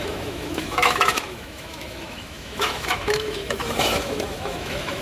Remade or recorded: remade